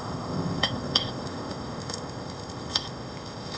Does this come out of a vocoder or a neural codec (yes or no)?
yes